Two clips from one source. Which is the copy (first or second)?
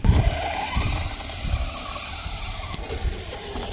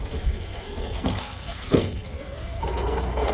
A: second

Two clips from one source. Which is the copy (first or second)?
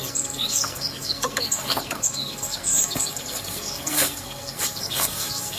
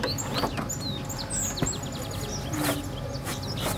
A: first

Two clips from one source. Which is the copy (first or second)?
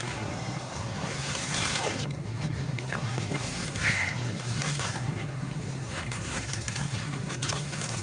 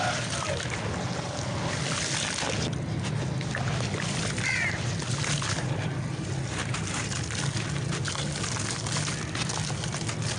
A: first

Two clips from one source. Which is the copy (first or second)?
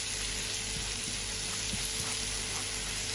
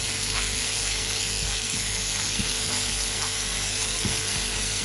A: second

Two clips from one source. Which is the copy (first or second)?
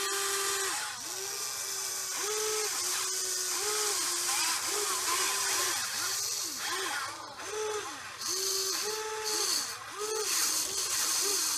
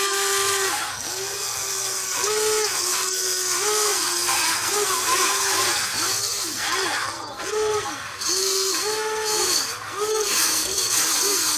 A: second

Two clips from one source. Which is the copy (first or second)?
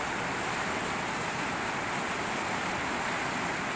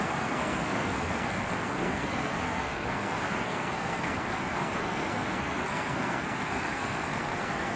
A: second